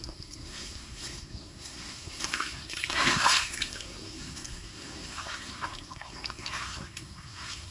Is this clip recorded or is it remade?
remade